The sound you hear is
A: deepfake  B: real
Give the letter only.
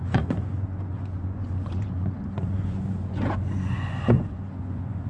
A